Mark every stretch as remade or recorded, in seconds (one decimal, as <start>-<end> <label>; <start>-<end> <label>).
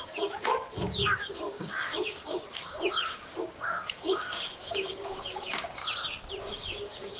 0.0-5.8 remade; 5.8-6.4 recorded; 6.4-7.2 remade